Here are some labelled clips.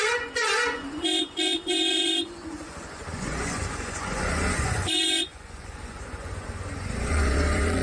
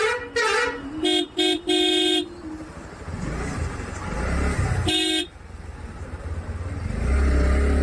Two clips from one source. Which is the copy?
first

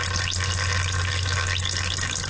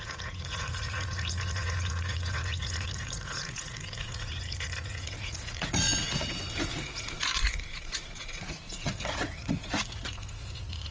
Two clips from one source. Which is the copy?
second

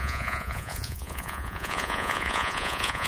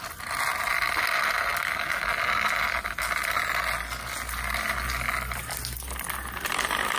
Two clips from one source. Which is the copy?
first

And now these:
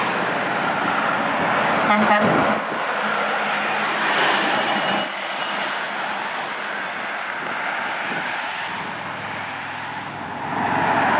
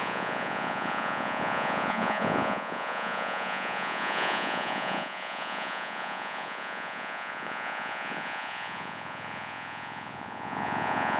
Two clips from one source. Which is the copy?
second